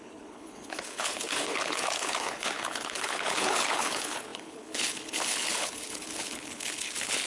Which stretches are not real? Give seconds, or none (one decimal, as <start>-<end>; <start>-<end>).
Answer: 0.0-7.3

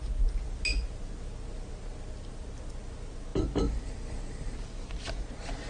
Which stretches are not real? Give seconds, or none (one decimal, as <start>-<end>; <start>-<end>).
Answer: none

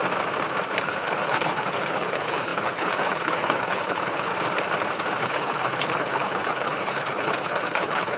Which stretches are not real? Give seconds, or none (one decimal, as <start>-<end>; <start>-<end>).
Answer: 0.8-4.3; 5.2-8.2

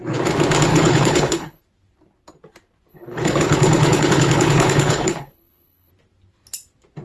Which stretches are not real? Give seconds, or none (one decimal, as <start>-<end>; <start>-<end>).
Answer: 0.7-1.6; 2.9-5.9

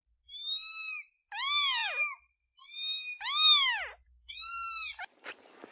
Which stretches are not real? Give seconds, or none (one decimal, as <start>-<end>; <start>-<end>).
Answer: none

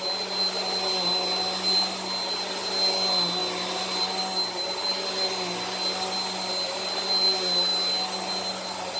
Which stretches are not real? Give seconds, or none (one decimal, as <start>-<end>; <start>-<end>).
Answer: none

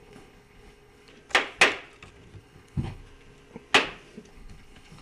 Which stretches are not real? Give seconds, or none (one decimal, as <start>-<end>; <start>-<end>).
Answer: 0.0-1.1; 2.4-3.0; 4.3-5.0

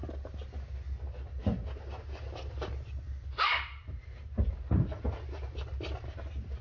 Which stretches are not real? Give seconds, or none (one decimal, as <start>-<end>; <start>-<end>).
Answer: none